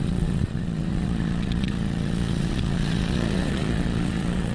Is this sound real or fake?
fake